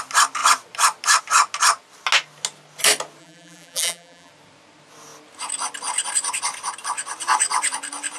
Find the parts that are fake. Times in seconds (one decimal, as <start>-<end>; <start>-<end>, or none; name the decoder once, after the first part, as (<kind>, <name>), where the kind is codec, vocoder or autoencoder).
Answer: 3.2-4.3 (vocoder, BigVGAN v2)